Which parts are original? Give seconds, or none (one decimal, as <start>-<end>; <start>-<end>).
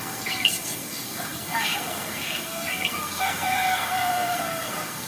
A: none